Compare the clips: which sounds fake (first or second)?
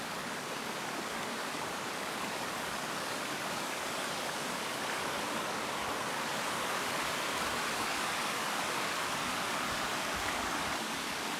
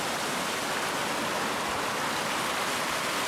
first